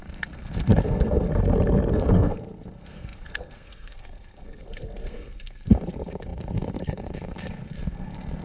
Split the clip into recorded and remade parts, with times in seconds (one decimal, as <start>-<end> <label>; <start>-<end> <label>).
0.0-1.3 remade; 1.3-1.9 recorded; 1.9-8.4 remade